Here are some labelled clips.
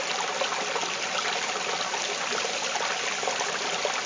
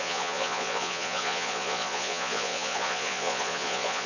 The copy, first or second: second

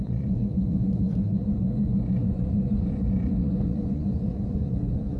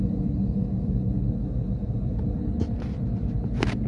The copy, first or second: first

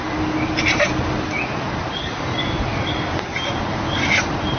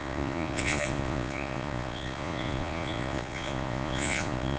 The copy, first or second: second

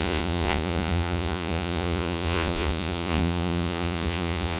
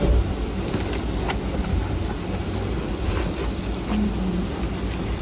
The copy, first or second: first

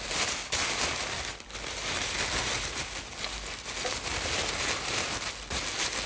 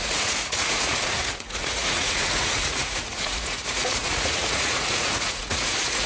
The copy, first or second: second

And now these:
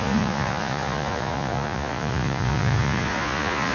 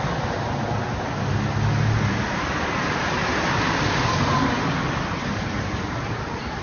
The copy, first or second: first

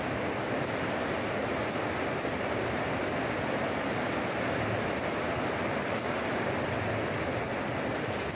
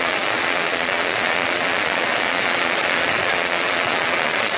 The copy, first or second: second